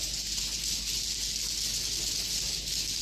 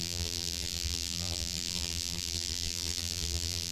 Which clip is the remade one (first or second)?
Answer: second